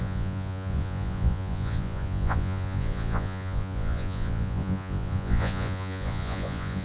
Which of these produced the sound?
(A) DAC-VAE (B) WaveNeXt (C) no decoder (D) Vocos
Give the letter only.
D